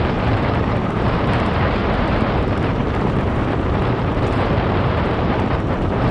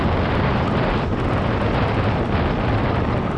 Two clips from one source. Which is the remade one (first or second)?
first